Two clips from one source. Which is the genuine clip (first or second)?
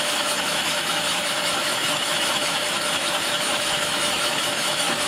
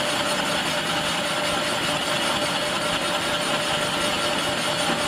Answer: second